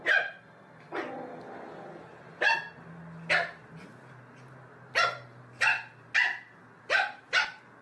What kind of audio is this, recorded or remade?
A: recorded